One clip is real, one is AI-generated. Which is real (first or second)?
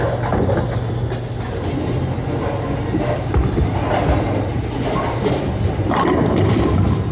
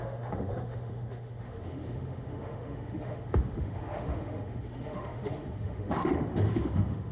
first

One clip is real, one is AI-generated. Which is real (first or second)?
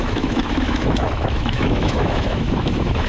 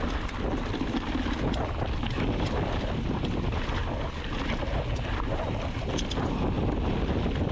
second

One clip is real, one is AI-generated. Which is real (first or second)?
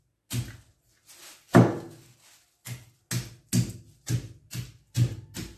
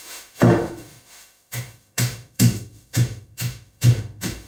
first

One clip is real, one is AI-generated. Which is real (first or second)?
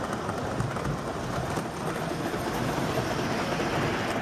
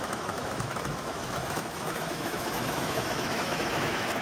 first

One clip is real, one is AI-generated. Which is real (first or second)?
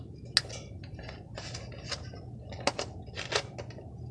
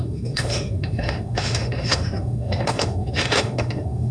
first